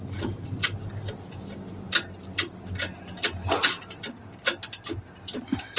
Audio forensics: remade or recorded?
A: recorded